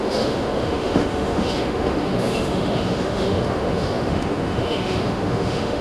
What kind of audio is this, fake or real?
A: fake